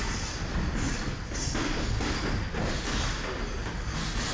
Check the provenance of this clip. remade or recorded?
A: recorded